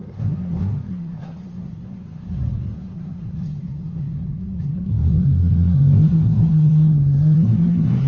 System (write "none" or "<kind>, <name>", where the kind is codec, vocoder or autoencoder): codec, SNAC